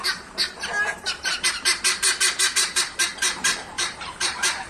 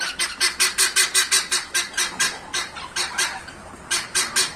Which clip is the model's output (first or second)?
first